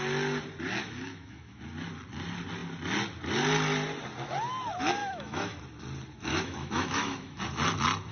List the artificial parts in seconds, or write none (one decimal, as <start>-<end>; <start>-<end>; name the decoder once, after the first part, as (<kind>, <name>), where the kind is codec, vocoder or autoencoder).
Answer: 0.8-1.6 (autoencoder, DAC-VAE); 5.0-5.6; 6.3-7.4

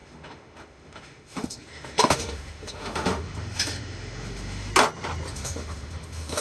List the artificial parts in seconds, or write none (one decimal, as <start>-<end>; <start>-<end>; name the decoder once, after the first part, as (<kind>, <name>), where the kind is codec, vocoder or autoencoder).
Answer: 0.0-4.7 (autoencoder, DAC-VAE); 5.3-6.4

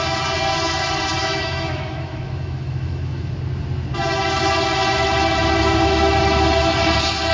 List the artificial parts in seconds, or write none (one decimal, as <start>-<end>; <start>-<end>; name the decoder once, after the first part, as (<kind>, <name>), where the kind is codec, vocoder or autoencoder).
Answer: 1.2-3.3 (autoencoder, DAC-VAE)

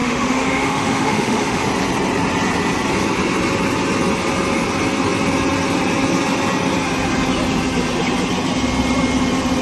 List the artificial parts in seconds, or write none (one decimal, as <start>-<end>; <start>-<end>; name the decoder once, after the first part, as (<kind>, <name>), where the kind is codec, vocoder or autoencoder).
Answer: 0.0-1.6 (autoencoder, DAC-VAE)

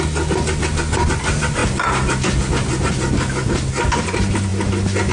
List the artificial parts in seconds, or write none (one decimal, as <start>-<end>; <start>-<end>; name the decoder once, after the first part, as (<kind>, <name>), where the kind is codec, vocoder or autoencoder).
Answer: none

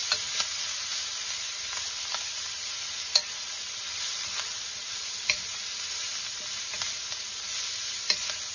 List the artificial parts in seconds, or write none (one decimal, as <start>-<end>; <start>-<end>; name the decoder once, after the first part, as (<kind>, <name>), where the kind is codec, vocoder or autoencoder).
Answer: none